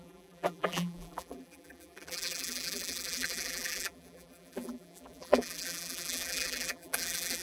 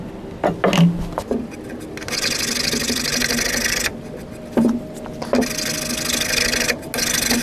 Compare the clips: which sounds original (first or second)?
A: second